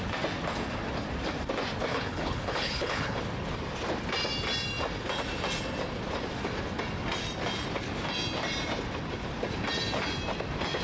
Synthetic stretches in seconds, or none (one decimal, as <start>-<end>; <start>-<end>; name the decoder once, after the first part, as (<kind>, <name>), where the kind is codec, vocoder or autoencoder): 1.9-3.2 (codec, HILCodec)